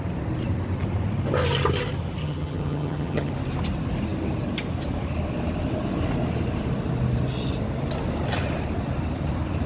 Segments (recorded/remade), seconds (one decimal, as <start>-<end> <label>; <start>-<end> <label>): 0.0-2.2 recorded; 2.2-3.3 remade; 3.3-9.7 recorded